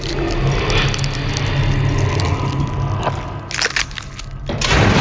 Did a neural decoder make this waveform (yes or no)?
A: no